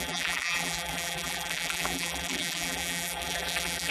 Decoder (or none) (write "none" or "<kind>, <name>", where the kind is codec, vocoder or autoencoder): vocoder, BigVGAN v2